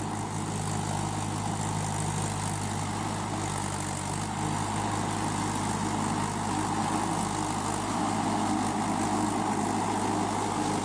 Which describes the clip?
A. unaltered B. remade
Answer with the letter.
A